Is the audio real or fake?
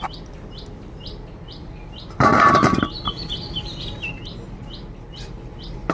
real